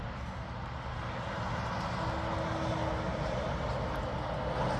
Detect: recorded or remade recorded